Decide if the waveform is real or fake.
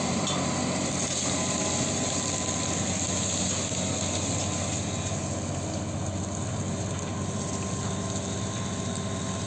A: real